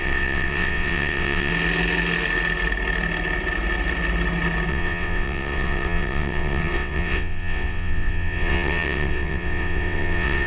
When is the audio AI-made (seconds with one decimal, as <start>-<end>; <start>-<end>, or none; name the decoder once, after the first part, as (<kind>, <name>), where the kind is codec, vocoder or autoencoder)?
0.0-1.5 (vocoder, WaveNeXt); 4.7-10.5